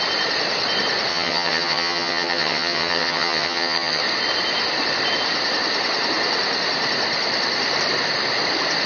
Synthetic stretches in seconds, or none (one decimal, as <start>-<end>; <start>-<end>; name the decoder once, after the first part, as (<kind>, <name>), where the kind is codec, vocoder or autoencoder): 1.1-4.0 (vocoder, HiFi-GAN)